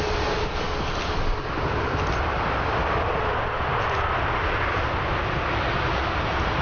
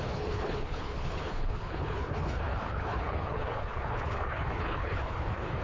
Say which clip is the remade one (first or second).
second